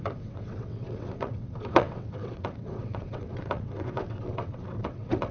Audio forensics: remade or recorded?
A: remade